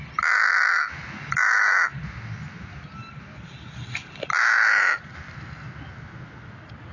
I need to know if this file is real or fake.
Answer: real